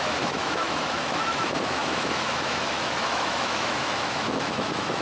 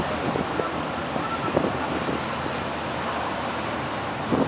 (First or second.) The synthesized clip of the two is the first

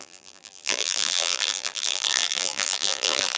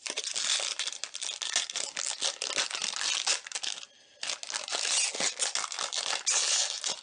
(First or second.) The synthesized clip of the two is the first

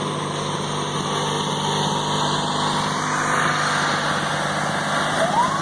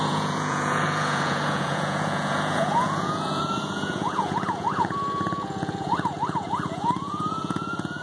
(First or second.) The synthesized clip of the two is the second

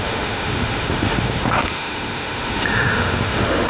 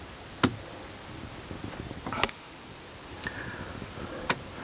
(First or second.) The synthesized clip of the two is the first